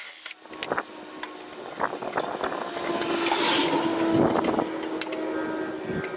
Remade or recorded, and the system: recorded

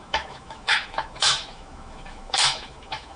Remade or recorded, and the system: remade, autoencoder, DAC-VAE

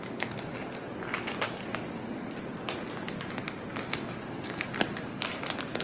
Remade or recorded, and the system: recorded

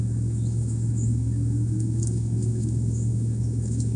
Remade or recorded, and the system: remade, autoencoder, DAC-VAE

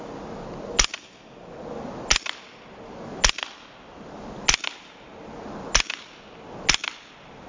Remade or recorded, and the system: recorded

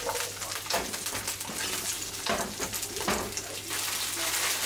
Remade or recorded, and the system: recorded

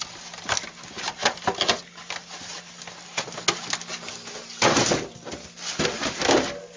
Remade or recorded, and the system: recorded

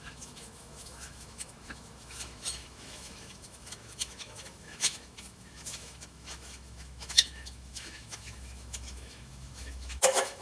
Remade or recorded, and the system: remade, autoencoder, DAC-VAE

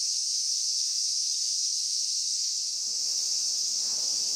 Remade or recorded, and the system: remade, autoencoder, DAC-VAE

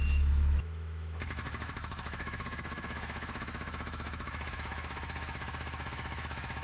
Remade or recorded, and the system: remade, autoencoder, DAC-VAE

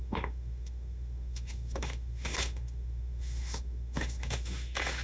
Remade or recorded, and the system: remade, autoencoder, DAC-VAE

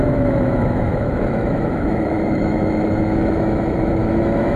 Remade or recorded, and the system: remade, autoencoder, DAC-VAE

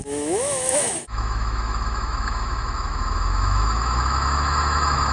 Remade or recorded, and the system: remade, autoencoder, DAC-VAE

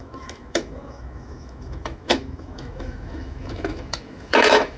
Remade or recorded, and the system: remade, autoencoder, DAC-VAE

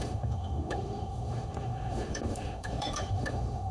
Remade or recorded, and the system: remade, autoencoder, DAC-VAE